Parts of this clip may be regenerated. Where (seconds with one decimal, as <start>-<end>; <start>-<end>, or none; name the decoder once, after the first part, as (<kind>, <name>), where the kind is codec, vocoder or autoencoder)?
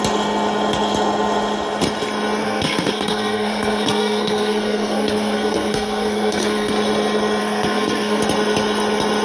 2.4-6.7 (codec, SNAC); 7.4-8.2